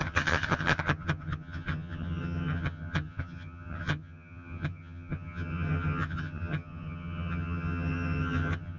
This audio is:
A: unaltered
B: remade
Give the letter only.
B